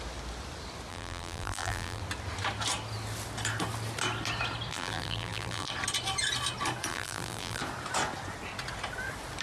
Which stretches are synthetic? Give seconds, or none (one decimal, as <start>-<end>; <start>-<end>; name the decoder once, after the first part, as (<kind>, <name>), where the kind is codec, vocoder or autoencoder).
0.9-2.0 (vocoder, BigVGAN v2); 4.7-5.7; 6.9-7.6